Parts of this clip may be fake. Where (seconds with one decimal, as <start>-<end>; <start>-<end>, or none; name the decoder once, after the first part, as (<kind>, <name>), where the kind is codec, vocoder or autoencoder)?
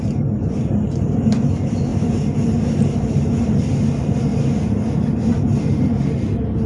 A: none